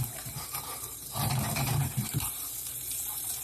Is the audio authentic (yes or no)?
no